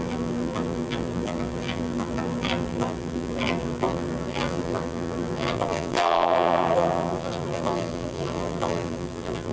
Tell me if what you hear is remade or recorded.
remade